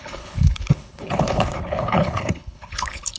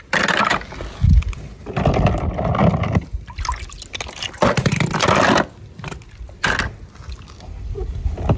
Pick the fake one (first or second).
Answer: first